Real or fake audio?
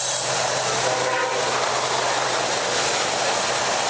real